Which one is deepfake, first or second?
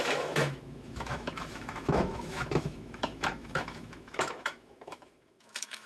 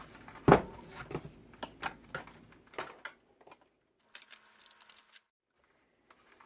first